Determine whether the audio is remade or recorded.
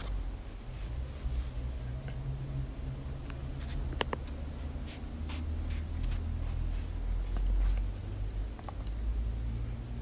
recorded